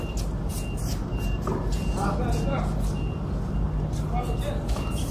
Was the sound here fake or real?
real